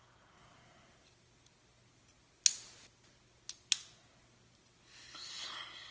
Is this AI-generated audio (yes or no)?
no